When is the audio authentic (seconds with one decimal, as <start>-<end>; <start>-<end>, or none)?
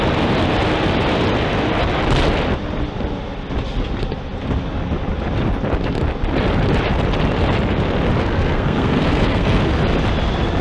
0.0-8.2; 9.6-10.6